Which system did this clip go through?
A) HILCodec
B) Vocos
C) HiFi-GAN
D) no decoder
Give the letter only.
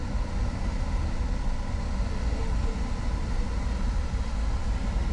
D